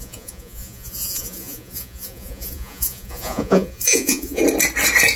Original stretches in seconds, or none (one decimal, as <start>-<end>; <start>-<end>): 4.4-5.2